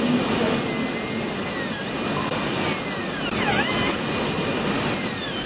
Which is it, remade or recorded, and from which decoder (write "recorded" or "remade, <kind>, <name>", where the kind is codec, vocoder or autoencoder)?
recorded